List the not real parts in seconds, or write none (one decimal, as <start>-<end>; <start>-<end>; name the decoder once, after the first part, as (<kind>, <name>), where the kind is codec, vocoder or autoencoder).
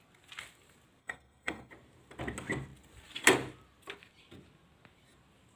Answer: 1.0-1.7 (codec, SNAC)